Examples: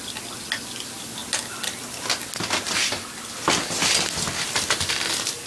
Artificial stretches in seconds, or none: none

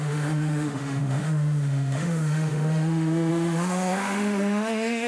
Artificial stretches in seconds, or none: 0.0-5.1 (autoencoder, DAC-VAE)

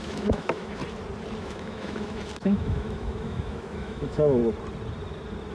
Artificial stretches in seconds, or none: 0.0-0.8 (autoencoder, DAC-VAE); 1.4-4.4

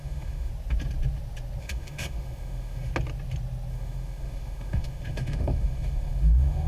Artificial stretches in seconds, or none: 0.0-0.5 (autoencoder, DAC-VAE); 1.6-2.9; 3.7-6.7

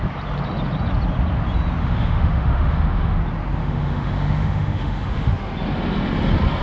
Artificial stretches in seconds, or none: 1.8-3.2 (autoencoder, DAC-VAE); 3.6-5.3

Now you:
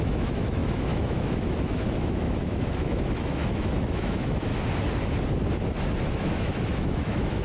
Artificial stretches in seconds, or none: 0.0-4.5 (autoencoder, DAC-VAE); 6.0-7.4